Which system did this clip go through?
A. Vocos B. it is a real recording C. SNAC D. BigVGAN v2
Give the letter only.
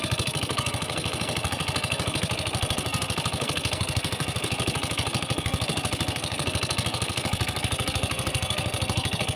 C